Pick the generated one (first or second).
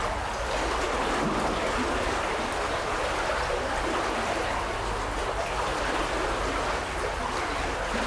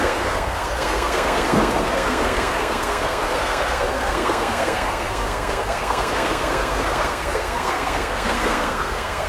second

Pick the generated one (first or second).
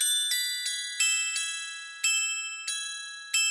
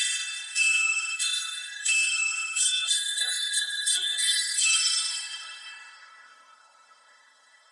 second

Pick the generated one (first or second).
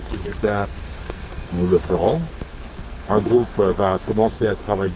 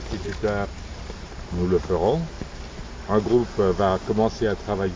first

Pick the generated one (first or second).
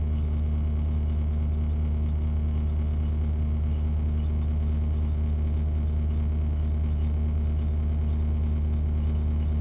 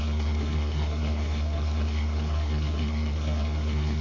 second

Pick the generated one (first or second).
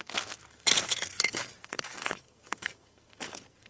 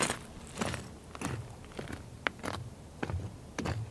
first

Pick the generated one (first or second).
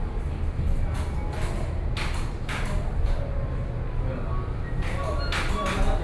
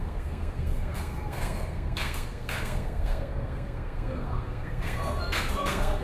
second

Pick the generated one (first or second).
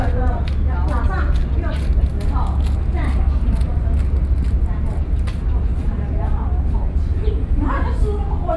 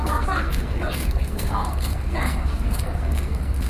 second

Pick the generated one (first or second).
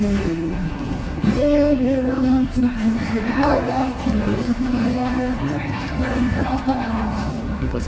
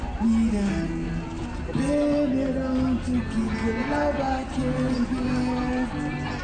first